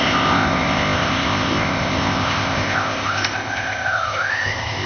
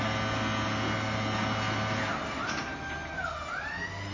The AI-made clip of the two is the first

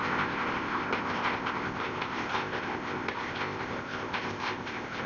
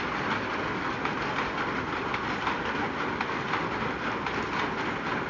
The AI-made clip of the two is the first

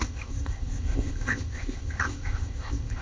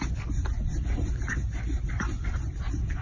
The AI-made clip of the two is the first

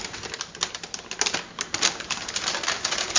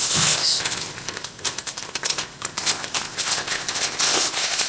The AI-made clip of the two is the second